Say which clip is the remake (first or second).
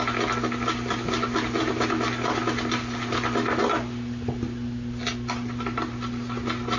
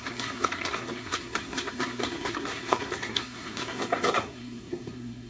second